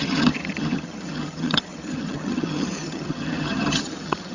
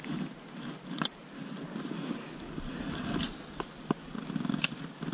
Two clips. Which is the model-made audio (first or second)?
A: first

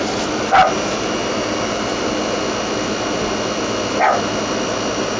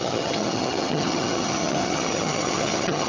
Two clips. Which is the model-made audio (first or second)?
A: second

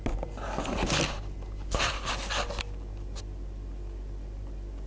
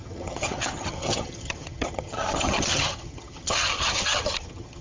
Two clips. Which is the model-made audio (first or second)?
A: second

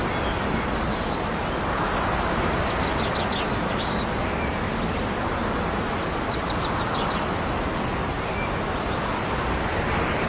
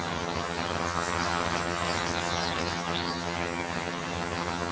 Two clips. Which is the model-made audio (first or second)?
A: second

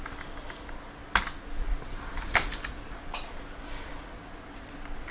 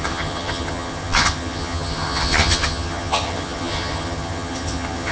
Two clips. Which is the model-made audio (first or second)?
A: second